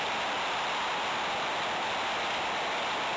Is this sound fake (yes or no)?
no